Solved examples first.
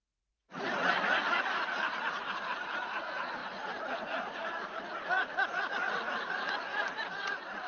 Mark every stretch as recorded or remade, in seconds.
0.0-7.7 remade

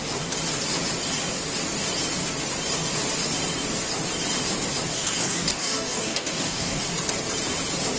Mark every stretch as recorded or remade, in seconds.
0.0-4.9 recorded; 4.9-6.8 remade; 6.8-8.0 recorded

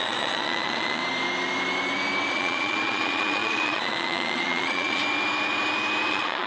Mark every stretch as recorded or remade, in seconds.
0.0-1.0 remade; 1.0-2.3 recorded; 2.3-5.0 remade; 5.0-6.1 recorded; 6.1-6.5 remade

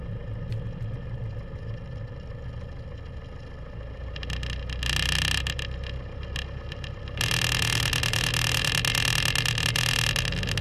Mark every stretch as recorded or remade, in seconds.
0.0-10.6 recorded

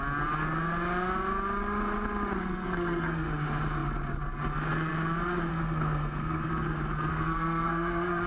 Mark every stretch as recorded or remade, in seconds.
0.0-2.4 recorded; 2.4-3.3 remade; 3.3-5.5 recorded; 5.5-6.5 remade; 6.5-7.1 recorded; 7.1-8.3 remade